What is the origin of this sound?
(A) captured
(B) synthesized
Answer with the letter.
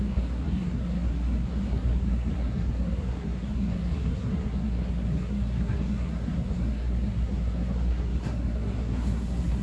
B